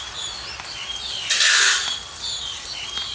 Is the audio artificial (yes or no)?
no